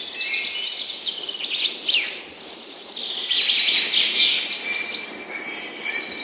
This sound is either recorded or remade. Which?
recorded